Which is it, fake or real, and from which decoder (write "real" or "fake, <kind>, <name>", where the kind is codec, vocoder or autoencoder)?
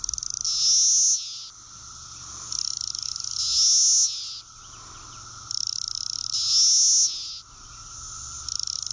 real